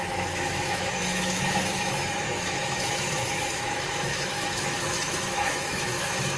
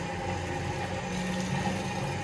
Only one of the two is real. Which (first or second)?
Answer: second